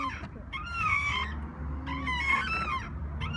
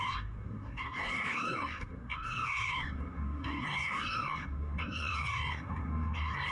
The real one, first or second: first